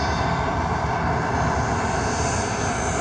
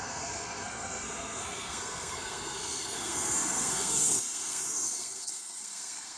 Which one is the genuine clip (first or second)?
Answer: first